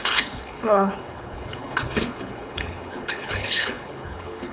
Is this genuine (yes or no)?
no